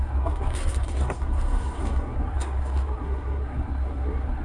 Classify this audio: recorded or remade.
remade